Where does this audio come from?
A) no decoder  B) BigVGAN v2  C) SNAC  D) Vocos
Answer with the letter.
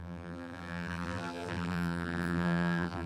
B